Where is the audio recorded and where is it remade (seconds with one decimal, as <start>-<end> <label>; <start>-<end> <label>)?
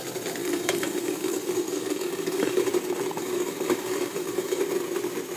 0.0-0.4 recorded; 0.4-2.7 remade; 2.7-3.2 recorded; 3.2-4.6 remade; 4.6-5.4 recorded